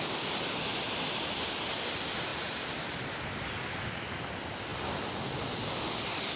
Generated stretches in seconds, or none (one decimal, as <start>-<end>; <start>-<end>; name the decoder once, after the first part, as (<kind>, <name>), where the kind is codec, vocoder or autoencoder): none